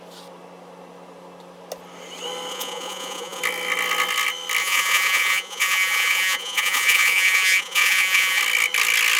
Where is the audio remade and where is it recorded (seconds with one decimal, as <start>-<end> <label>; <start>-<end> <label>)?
0.0-2.5 recorded; 2.5-3.4 remade; 3.4-4.6 recorded; 4.6-8.4 remade; 8.4-9.2 recorded